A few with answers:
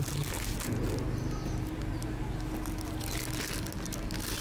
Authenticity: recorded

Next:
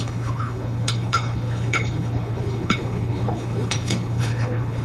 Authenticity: remade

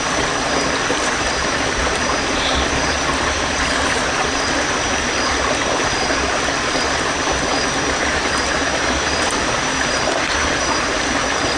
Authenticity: recorded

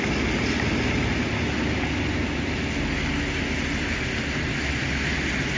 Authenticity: recorded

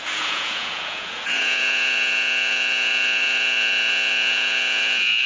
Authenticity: remade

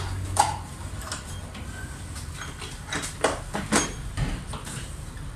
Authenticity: recorded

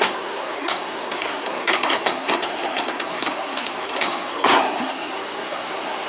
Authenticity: remade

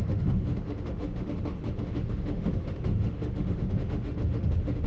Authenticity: remade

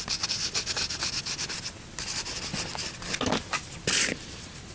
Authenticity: recorded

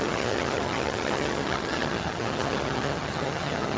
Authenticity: remade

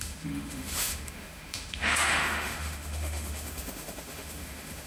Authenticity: remade